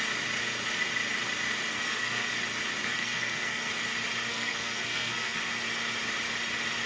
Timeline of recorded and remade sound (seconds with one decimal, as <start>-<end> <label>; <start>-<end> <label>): 0.0-1.7 recorded; 1.7-2.3 remade; 2.3-2.8 recorded; 2.8-3.7 remade; 3.7-4.3 recorded; 4.3-5.5 remade; 5.5-6.9 recorded